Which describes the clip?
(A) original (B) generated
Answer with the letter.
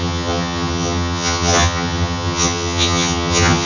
B